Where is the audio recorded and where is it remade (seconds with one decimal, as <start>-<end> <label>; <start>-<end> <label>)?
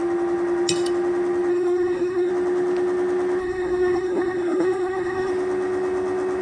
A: 0.0-1.5 recorded; 1.5-2.3 remade; 2.3-3.4 recorded; 3.4-5.3 remade; 5.3-6.4 recorded